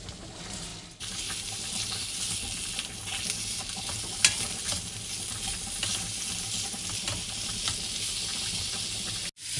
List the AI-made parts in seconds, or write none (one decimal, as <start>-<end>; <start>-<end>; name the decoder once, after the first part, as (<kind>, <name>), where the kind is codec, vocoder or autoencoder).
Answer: none